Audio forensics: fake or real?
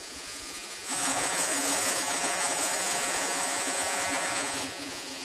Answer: fake